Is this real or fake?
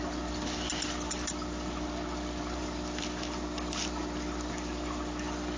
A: real